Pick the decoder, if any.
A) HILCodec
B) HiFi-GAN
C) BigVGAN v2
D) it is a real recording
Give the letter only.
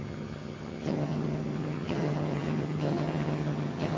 B